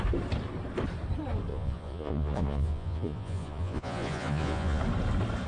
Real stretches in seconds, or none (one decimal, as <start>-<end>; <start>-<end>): 0.0-1.5; 4.8-5.5